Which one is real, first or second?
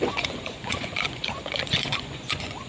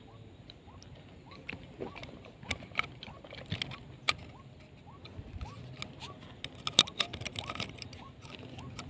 second